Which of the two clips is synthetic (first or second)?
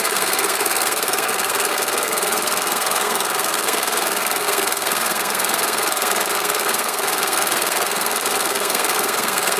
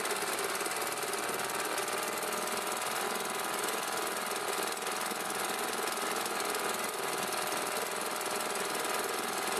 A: first